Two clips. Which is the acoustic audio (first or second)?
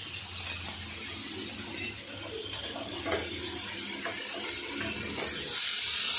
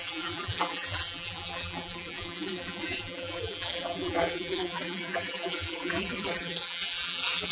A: first